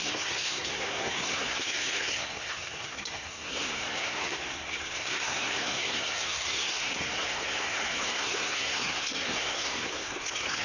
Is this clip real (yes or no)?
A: no